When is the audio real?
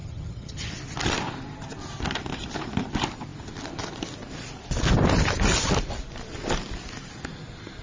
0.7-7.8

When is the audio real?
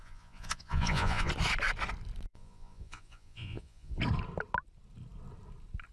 1.3-2.3; 4.0-5.9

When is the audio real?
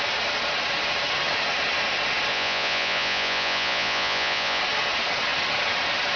0.0-2.3; 4.6-6.2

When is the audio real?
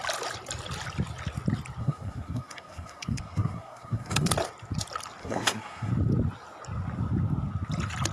0.0-1.8; 4.3-5.2; 5.9-8.1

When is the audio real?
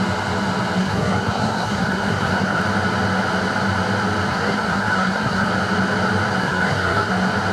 0.0-0.8; 2.6-4.3; 5.5-6.4; 7.1-7.5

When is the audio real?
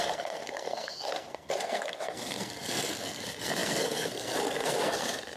none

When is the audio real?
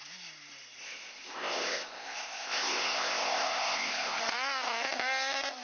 0.0-0.8; 4.2-5.6